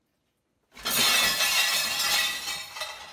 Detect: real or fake real